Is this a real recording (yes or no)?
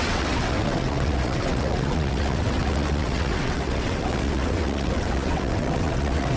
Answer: no